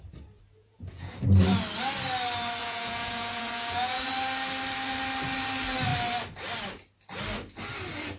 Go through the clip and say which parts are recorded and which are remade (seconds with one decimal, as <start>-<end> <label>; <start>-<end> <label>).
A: 0.0-0.6 recorded; 0.6-1.1 remade; 1.1-2.6 recorded; 2.6-4.1 remade; 4.1-8.2 recorded